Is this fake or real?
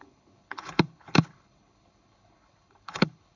fake